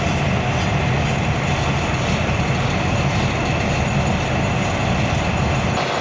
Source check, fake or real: real